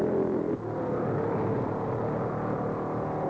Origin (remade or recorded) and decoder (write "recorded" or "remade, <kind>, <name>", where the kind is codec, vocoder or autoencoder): recorded